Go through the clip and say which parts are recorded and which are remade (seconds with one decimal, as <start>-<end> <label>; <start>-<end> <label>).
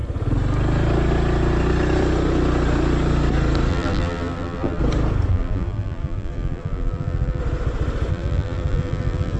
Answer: 0.0-3.7 recorded; 3.7-4.8 remade; 4.8-5.3 recorded; 5.3-7.4 remade; 7.4-8.1 recorded; 8.1-9.4 remade